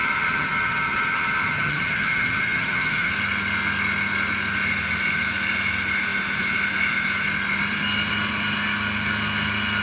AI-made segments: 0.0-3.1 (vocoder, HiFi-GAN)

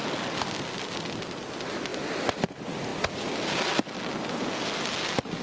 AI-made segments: none

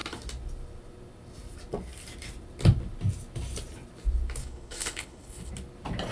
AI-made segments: 4.4-5.5 (codec, HILCodec)

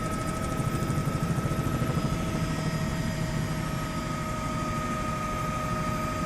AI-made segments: 1.0-1.5 (vocoder, BigVGAN v2); 2.9-3.4

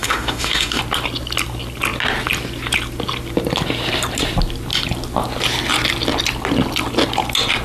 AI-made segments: 0.0-0.8 (autoencoder, DAC-VAE)

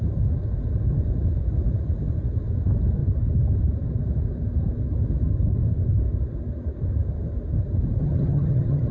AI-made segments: 8.0-8.9 (vocoder, HiFi-GAN)

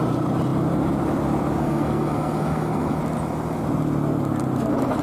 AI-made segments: 1.6-3.0 (codec, SNAC)

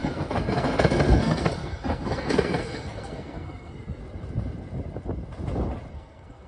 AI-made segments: 0.0-4.0 (codec, SNAC); 5.9-6.5